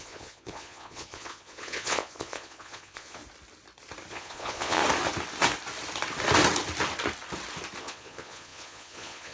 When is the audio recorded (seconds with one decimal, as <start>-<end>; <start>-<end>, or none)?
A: 3.2-4.1; 4.8-7.8